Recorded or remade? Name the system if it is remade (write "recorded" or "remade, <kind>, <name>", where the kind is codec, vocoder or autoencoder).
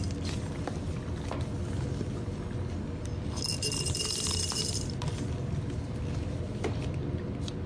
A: recorded